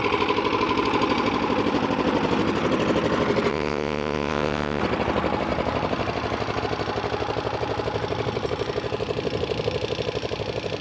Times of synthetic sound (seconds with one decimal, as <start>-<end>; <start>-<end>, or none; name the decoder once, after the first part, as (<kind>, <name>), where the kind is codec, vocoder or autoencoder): 3.5-4.8 (vocoder, WaveNeXt)